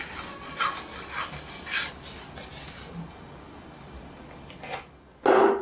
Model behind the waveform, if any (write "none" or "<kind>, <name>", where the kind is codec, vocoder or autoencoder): none